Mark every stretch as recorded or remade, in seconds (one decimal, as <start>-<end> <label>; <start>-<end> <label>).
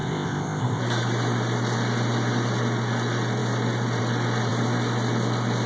0.0-0.8 remade; 0.8-5.7 recorded